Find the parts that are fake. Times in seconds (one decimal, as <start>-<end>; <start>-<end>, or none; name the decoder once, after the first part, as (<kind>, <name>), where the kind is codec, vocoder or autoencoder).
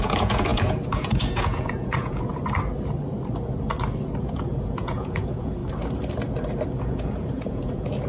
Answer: 0.0-2.3 (vocoder, Vocos); 4.2-5.6; 6.8-8.1